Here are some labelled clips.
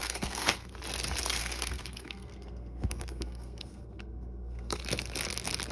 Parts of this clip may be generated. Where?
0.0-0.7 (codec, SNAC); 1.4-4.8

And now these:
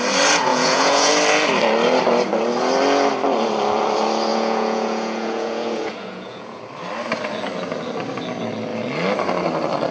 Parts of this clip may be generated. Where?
0.5-1.1 (vocoder, Vocos); 4.3-6.6

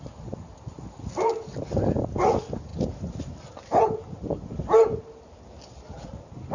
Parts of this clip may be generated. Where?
none

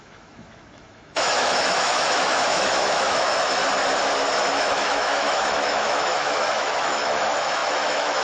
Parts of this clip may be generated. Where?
0.0-3.6 (autoencoder, DAC-VAE); 4.4-8.2